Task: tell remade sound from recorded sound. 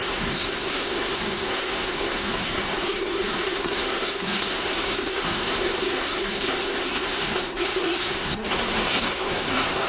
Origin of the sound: remade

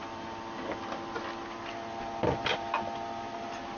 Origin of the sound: recorded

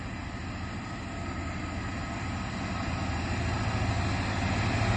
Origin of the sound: recorded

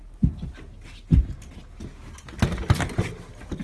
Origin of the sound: recorded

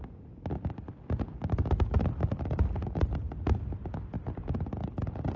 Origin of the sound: recorded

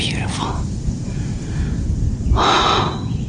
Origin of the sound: recorded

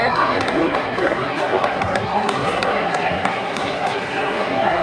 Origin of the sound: remade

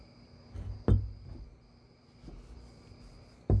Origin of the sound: recorded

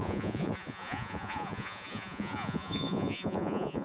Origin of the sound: remade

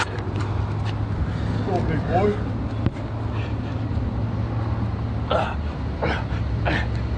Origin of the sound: recorded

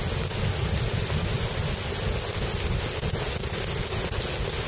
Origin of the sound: recorded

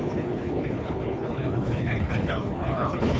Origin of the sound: remade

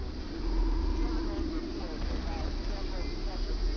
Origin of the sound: recorded